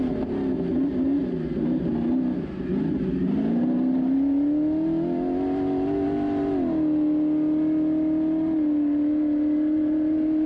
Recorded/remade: recorded